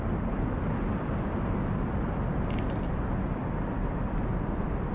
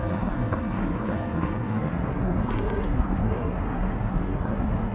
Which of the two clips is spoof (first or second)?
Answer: second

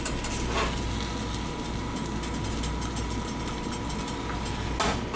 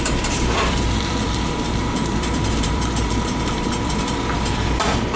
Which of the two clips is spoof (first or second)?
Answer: second